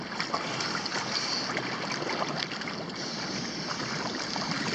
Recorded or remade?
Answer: recorded